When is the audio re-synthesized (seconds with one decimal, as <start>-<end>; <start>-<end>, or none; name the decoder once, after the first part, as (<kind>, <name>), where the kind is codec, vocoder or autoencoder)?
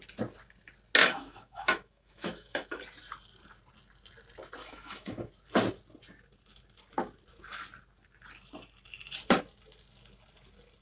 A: 1.0-2.8 (autoencoder, DAC-VAE); 4.6-5.3